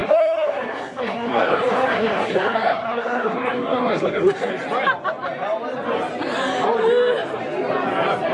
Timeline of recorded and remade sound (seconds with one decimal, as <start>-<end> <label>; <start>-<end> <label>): 0.0-4.5 remade; 4.5-8.3 recorded